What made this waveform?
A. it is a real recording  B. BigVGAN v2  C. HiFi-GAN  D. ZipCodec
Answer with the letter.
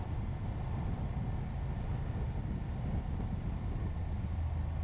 A